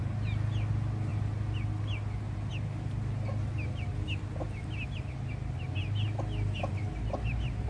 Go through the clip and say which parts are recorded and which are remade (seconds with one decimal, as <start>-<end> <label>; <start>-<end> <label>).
0.0-7.7 recorded